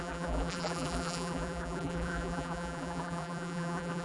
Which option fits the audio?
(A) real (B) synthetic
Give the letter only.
B